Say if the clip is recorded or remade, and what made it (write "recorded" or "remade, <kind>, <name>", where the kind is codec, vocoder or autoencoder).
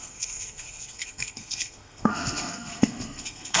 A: remade, codec, SNAC